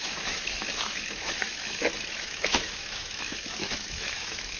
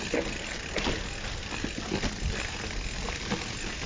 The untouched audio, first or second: second